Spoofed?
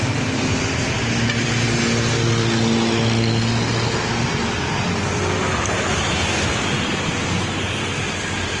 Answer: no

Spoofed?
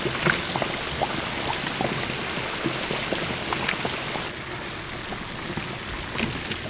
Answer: no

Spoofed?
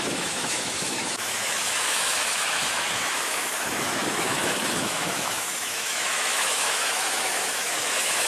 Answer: yes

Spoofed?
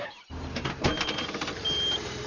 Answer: yes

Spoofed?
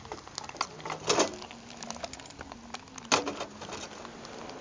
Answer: no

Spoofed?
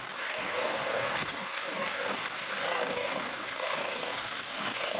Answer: yes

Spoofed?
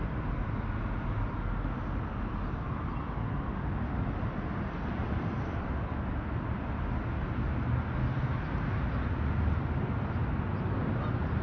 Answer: no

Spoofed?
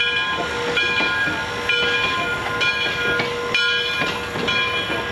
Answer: no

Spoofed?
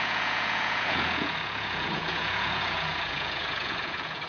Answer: yes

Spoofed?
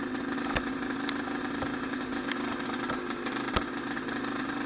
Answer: no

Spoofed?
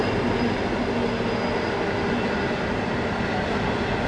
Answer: no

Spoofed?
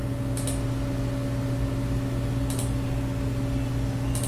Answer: no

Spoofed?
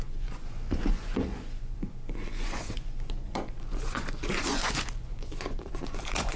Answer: yes